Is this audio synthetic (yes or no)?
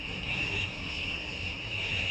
yes